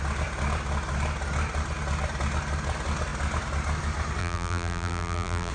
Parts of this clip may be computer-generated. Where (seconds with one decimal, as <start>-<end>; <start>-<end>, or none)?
4.2-5.5

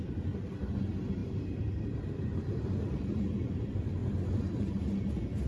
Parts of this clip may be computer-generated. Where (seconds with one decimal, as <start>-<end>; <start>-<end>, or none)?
0.0-4.0; 4.6-5.5

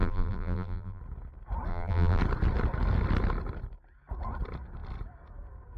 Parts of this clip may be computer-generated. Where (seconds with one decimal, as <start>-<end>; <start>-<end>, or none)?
0.0-1.0; 1.7-2.2

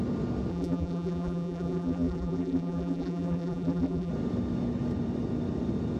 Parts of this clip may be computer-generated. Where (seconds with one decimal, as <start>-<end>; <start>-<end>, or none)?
0.5-4.1